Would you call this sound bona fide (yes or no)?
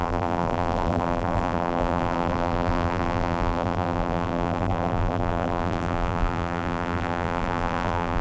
no